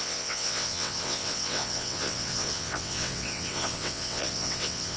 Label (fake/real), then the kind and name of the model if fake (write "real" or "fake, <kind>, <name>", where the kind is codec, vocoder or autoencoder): fake, vocoder, WaveNeXt